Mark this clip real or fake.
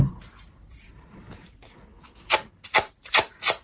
real